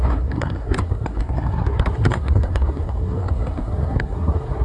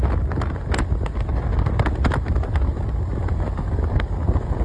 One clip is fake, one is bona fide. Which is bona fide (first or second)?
second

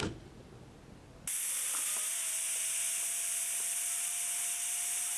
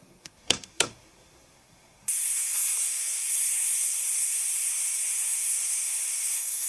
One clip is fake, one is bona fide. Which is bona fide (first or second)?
first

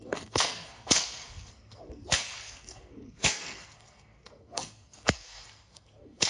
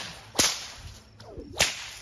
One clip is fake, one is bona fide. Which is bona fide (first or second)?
second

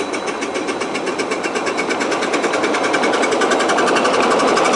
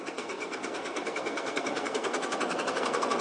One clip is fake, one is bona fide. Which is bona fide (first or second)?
first